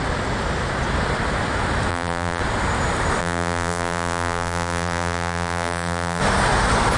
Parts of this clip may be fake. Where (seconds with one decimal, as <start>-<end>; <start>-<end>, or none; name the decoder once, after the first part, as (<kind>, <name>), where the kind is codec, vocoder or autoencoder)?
1.9-2.4 (vocoder, BigVGAN v2); 3.2-6.2

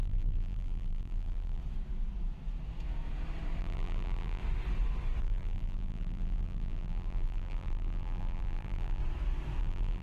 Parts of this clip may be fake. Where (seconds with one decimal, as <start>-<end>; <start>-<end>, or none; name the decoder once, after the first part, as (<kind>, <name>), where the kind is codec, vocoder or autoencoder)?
0.0-1.6 (vocoder, BigVGAN v2); 3.6-4.4; 5.2-9.0; 9.6-10.0

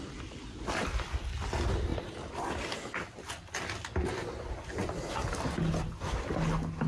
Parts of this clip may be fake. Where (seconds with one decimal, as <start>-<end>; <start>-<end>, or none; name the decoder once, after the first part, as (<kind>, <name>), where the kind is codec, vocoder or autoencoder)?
none

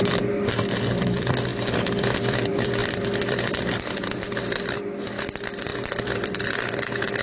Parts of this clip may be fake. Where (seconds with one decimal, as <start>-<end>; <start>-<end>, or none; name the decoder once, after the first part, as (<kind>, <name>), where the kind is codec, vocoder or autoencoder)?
0.0-1.5 (vocoder, BigVGAN v2); 2.0-7.2

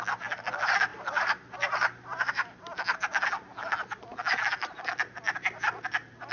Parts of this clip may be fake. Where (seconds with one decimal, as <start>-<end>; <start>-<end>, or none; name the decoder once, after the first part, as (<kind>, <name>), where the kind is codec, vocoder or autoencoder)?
0.9-2.7 (vocoder, BigVGAN v2)

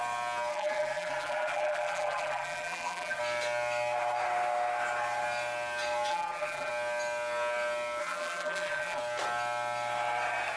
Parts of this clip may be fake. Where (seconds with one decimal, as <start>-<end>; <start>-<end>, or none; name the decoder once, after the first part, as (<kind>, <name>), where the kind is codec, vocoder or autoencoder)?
0.5-3.2 (vocoder, BigVGAN v2); 6.1-6.7; 8.0-9.0

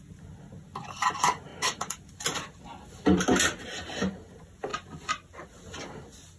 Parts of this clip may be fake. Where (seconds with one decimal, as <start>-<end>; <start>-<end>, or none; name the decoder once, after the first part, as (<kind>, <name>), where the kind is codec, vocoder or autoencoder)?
1.5-2.6 (vocoder, BigVGAN v2)

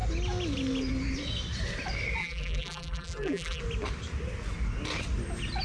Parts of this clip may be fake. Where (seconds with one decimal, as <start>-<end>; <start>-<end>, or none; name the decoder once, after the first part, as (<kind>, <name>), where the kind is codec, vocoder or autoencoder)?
2.2-3.6 (vocoder, BigVGAN v2)